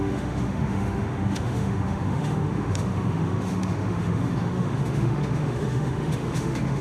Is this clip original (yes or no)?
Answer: no